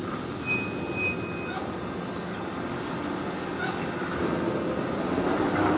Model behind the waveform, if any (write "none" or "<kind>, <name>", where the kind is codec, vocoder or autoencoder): none